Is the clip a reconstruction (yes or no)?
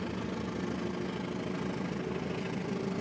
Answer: no